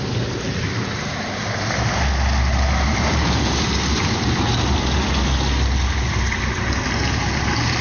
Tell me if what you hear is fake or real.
real